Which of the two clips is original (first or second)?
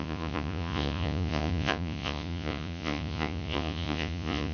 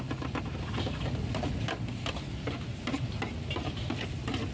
second